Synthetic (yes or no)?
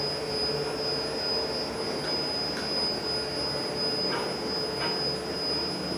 no